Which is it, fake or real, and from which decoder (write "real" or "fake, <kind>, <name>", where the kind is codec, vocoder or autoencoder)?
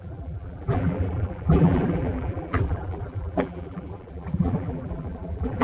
fake, vocoder, BigVGAN v2